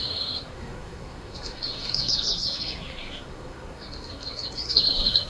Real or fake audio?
fake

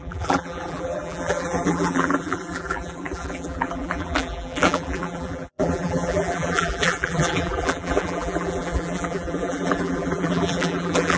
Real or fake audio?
fake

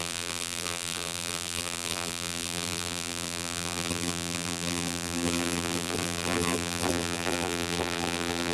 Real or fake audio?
fake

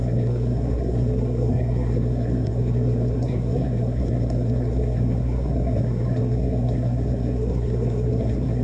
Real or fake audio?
fake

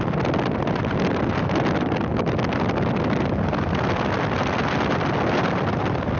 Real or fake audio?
real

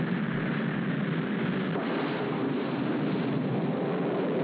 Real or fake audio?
real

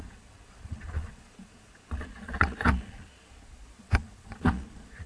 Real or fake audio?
fake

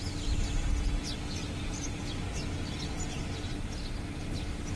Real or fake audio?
real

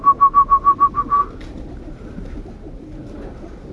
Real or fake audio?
real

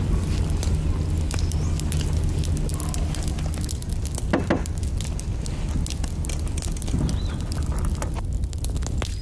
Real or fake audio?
real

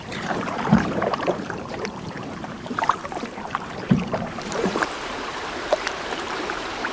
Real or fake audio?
fake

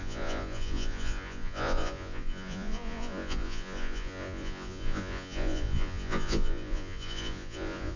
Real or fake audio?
fake